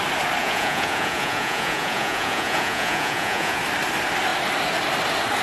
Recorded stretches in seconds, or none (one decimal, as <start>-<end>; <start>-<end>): 0.0-0.4; 3.6-5.4